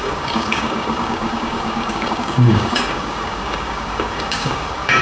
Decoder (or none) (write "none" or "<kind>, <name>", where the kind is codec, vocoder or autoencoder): codec, DAC